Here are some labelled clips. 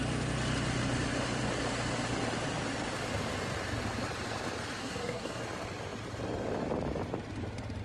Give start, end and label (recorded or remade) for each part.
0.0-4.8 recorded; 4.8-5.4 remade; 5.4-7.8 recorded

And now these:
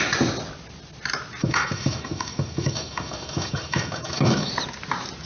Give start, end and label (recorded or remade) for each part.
0.0-1.4 recorded; 1.4-4.5 remade; 4.5-5.3 recorded